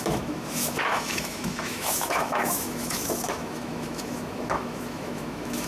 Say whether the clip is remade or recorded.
remade